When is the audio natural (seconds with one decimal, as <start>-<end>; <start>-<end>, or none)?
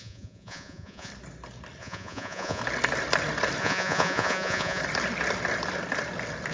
1.1-1.8; 2.6-3.6; 4.8-6.5